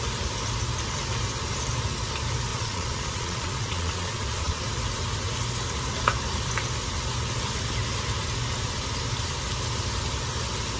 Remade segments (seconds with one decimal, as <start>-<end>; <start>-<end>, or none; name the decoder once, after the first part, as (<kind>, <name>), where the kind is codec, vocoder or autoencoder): 2.5-4.6 (vocoder, Vocos)

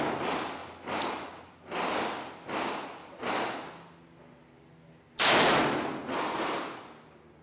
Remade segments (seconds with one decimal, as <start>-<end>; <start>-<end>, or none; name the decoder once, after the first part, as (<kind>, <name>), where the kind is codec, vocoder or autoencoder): none

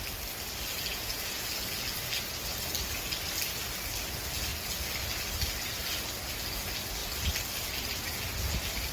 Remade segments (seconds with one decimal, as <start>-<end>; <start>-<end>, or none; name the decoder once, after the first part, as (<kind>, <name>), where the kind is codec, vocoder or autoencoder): 0.9-1.5 (vocoder, Vocos)

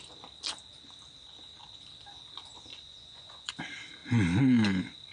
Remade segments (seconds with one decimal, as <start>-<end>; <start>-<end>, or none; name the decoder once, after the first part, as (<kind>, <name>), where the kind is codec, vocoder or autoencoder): 2.7-3.5 (vocoder, Vocos)

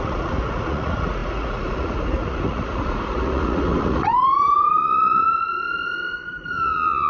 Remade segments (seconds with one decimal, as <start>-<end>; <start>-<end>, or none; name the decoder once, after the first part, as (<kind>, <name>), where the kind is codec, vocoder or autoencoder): 0.0-7.1 (vocoder, Vocos)

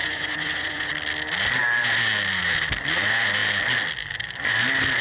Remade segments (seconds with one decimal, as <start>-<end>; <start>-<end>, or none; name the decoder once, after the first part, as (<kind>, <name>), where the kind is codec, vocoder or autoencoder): 0.0-0.9 (vocoder, Vocos)